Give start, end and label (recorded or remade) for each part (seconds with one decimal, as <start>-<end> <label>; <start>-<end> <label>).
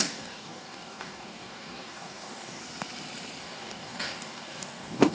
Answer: 0.0-2.6 remade; 2.6-3.4 recorded; 3.4-5.1 remade